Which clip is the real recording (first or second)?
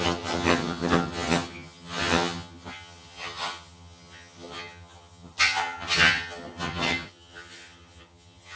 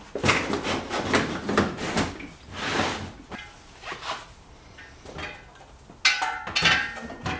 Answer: second